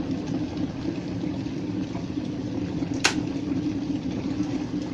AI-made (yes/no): no